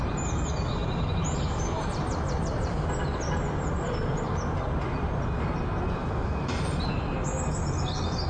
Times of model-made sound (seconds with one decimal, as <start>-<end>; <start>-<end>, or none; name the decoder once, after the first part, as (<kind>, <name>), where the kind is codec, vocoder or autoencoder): 0.8-2.7 (vocoder, BigVGAN v2); 6.0-6.9